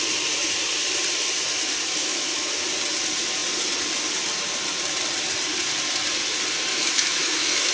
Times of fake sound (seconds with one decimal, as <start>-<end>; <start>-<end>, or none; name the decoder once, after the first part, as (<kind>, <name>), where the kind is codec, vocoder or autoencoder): 2.0-2.5 (autoencoder, DAC-VAE); 6.7-7.7